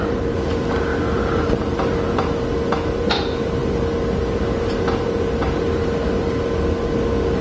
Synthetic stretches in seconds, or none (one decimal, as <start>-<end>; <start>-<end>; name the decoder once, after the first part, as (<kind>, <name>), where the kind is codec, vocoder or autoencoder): none